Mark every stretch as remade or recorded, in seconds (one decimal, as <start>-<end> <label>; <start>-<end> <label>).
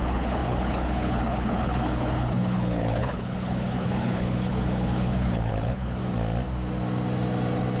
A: 0.0-6.0 remade; 6.0-7.8 recorded